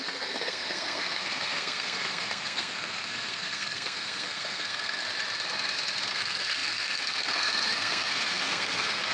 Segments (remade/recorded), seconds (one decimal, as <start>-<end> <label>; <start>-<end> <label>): 0.0-5.0 remade; 5.0-6.1 recorded; 6.1-9.1 remade